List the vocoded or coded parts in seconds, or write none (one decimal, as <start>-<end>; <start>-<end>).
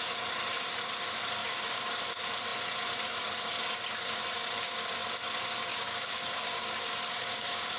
1.4-1.9; 5.7-7.8